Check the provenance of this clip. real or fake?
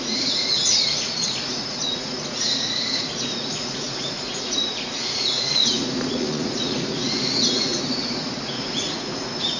fake